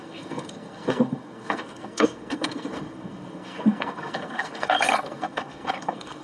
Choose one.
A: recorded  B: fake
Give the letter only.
B